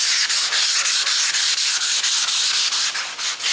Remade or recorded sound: recorded